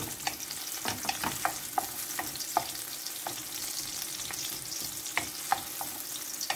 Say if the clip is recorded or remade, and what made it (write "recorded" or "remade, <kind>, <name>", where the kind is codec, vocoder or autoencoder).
recorded